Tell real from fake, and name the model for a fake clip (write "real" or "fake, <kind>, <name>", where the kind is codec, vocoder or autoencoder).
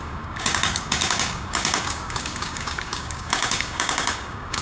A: fake, codec, DAC